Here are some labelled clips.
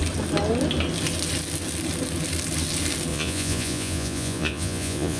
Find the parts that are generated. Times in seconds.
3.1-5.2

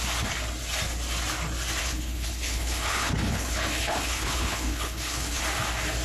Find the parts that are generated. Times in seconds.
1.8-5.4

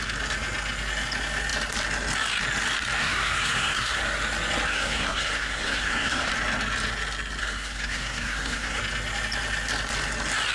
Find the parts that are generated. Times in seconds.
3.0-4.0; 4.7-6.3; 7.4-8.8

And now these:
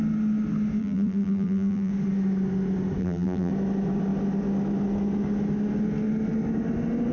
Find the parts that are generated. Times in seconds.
0.8-1.9; 3.0-3.5

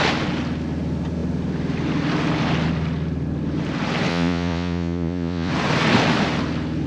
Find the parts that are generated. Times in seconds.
4.1-5.5